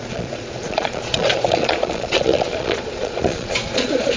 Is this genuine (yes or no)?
no